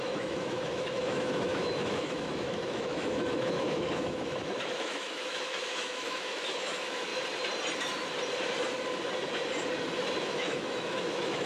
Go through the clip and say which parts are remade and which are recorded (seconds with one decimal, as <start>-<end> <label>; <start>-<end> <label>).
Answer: 0.0-7.1 remade; 7.1-10.2 recorded; 10.2-11.5 remade